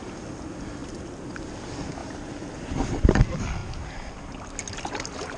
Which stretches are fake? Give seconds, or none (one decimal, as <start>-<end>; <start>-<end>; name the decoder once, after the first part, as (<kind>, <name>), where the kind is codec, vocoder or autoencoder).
2.0-3.1 (vocoder, BigVGAN v2)